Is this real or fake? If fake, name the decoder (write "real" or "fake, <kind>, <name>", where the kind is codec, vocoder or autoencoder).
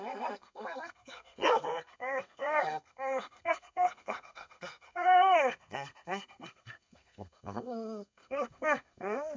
fake, codec, SNAC